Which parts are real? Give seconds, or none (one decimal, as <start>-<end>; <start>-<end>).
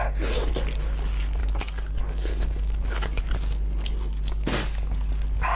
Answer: 0.0-1.4; 3.2-4.6; 5.1-5.5